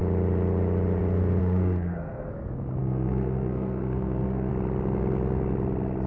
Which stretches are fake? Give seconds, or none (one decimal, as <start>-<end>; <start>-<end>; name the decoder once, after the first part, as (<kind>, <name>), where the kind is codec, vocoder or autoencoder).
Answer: 1.4-2.3 (codec, SNAC); 2.8-4.5